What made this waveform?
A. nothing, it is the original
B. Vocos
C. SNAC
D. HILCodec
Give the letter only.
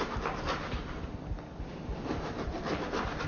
A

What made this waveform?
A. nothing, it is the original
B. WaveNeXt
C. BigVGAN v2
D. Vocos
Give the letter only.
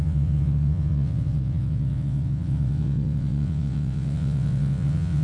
B